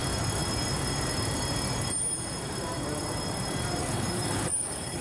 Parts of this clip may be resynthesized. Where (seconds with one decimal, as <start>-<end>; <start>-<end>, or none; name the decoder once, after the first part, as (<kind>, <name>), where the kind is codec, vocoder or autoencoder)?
3.8-5.0 (codec, DAC)